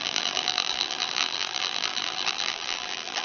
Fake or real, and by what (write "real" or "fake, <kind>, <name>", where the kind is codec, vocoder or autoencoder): fake, vocoder, BigVGAN v2